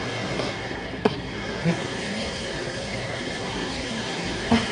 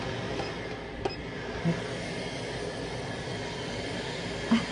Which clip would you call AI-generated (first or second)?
first